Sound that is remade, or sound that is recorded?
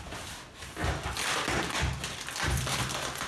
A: recorded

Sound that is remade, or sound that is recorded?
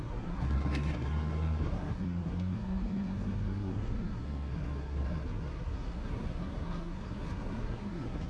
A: remade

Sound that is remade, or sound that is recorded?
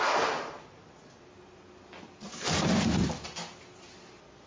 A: recorded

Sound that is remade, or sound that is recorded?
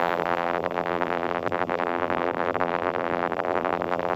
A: remade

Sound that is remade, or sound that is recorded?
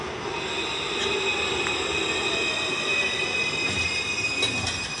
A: recorded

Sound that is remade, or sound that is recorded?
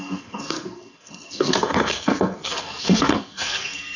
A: remade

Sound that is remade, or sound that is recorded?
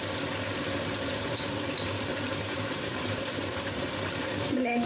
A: remade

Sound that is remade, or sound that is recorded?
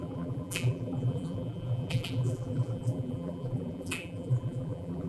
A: remade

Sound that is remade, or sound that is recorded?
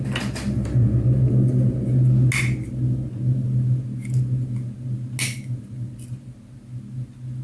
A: recorded